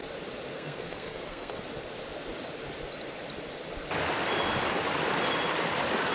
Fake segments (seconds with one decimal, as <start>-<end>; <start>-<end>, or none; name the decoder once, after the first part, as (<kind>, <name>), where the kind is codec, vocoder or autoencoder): 0.5-1.6 (codec, SNAC)